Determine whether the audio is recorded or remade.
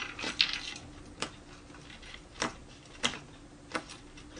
recorded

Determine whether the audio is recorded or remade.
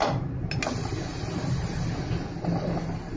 recorded